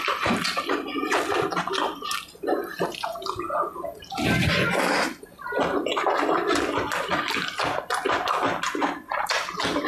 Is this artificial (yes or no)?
no